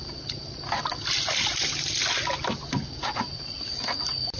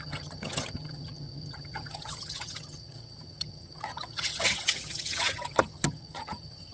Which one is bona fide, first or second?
first